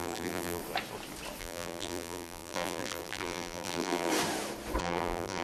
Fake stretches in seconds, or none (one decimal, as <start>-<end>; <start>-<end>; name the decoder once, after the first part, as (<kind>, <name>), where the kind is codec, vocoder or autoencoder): 0.0-0.6 (vocoder, BigVGAN v2); 1.4-4.1; 4.8-5.4